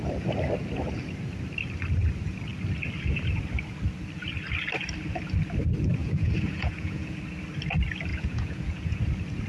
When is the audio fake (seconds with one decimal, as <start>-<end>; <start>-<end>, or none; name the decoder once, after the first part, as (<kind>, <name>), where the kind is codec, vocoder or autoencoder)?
6.0-7.2 (vocoder, Vocos); 8.1-9.0